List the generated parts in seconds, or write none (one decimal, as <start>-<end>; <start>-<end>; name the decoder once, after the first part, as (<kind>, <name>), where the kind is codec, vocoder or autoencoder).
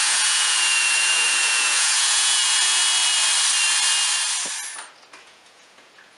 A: 0.0-2.8 (vocoder, Vocos); 5.2-6.2